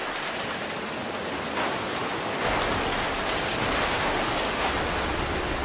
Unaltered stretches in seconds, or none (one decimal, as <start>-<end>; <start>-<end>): 0.0-5.6